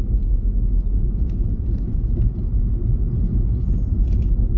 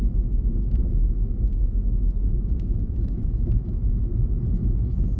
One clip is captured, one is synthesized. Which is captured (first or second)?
first